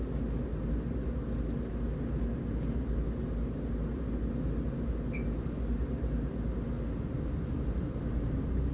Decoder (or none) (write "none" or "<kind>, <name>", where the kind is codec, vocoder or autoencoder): none